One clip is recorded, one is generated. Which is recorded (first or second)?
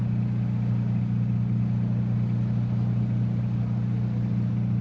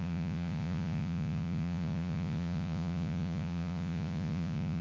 first